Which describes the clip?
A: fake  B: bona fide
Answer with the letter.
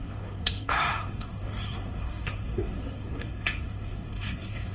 A